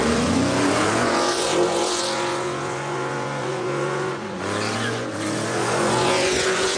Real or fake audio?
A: fake